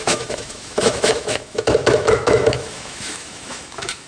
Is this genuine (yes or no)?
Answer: no